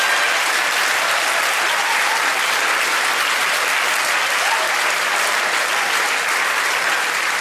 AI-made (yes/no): no